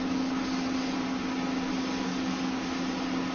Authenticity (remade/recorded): recorded